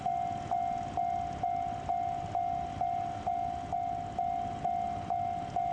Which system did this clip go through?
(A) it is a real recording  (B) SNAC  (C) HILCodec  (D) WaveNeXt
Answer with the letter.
A